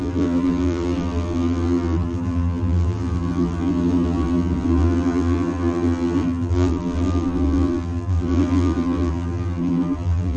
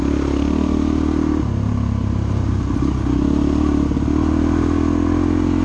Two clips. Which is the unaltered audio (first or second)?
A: second